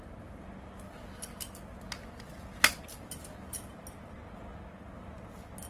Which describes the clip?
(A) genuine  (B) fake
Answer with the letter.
A